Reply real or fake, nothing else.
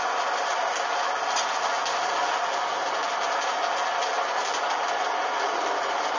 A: real